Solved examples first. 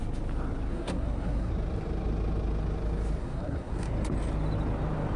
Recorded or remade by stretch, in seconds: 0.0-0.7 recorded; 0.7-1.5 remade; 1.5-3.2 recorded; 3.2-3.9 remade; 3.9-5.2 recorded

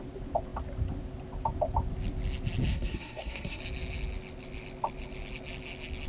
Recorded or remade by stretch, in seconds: 0.0-2.7 recorded; 2.7-3.6 remade; 3.6-6.1 recorded

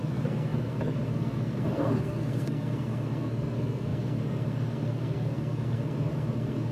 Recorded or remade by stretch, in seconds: 0.0-6.7 remade

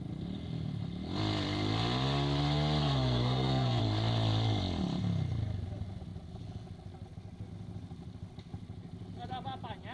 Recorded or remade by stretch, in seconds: 0.0-2.8 recorded; 2.8-3.8 remade; 3.8-9.9 recorded

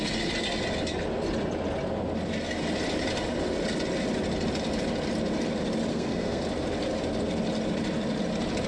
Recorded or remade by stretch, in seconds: 0.0-5.9 recorded; 5.9-6.4 remade; 6.4-8.7 recorded

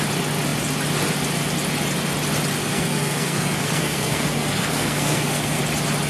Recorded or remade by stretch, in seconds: 0.0-2.6 recorded; 2.6-5.6 remade; 5.6-6.1 recorded

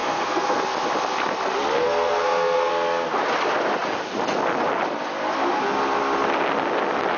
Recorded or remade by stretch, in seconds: 0.0-0.6 remade; 0.6-1.8 recorded; 1.8-2.7 remade; 2.7-7.2 recorded

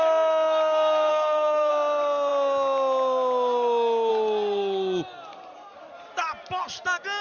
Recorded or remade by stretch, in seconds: 0.0-1.1 recorded; 1.1-1.7 remade; 1.7-7.2 recorded